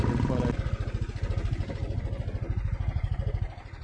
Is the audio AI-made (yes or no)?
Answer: no